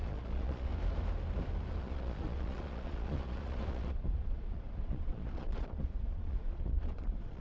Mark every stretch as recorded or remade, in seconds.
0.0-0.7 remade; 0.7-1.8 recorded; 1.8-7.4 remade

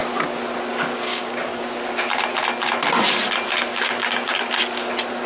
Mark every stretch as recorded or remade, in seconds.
0.0-1.1 recorded; 1.1-1.6 remade; 1.6-3.7 recorded; 3.7-4.6 remade; 4.6-5.3 recorded

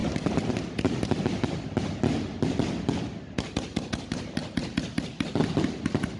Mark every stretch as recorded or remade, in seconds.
0.0-6.2 recorded

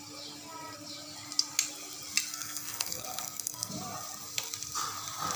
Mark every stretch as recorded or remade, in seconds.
0.0-2.3 recorded; 2.3-3.7 remade; 3.7-5.4 recorded